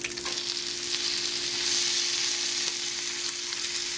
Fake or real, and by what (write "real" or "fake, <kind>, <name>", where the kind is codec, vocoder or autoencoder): real